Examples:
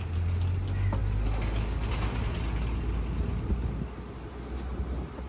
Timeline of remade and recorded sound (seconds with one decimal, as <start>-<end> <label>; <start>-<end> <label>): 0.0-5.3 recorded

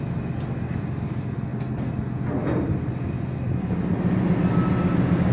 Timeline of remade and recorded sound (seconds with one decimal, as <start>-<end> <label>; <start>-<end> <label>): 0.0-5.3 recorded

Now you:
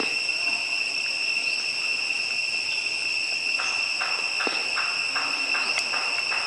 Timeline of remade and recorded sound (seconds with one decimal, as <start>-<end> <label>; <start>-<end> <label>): 0.0-6.5 recorded